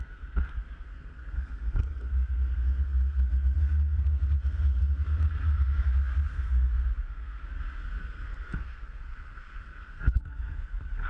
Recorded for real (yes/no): no